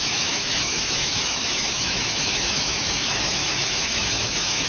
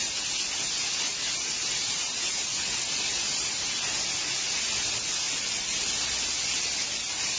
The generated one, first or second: first